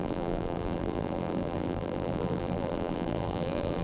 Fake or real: fake